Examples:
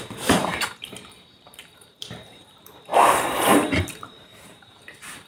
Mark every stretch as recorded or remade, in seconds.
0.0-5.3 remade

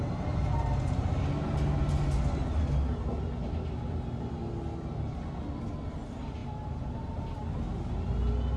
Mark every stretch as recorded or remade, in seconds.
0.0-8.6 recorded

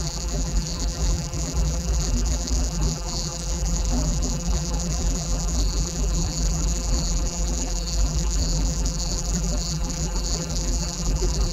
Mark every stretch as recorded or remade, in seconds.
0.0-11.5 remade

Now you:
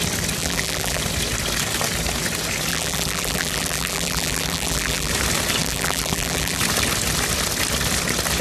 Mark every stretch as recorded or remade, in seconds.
0.0-0.4 recorded; 0.4-1.0 remade; 1.0-2.7 recorded; 2.7-5.1 remade; 5.1-5.6 recorded; 5.6-6.6 remade; 6.6-8.4 recorded

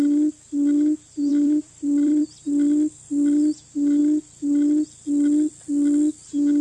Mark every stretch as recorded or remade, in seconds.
0.0-1.3 recorded; 1.3-2.3 remade; 2.3-6.6 recorded

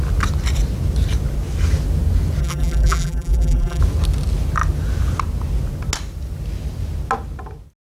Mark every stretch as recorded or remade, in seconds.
0.0-2.4 recorded; 2.4-3.8 remade; 3.8-7.9 recorded

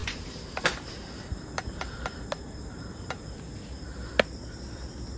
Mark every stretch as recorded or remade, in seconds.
0.0-3.1 remade; 3.1-5.2 recorded